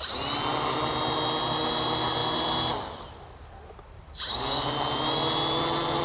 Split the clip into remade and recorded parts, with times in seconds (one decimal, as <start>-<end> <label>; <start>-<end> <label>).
0.0-6.0 recorded